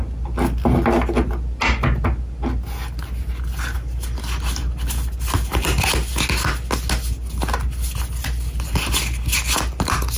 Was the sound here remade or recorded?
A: recorded